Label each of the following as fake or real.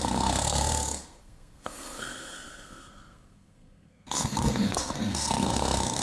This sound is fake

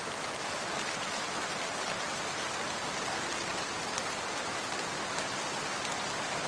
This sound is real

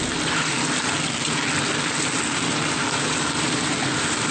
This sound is real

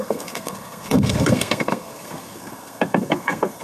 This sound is fake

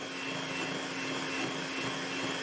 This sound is real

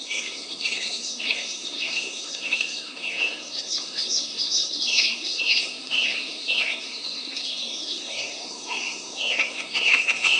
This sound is fake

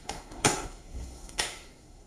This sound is fake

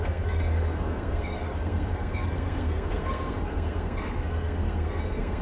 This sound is fake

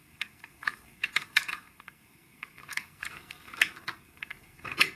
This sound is fake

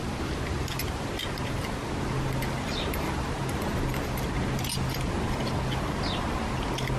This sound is real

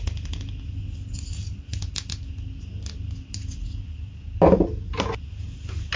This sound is real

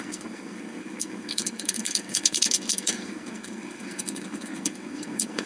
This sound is fake